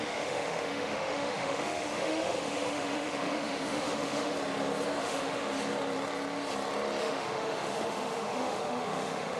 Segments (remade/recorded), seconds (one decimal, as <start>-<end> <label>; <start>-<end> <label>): 0.0-4.3 remade; 4.3-5.0 recorded; 5.0-5.4 remade; 5.4-7.0 recorded; 7.0-9.4 remade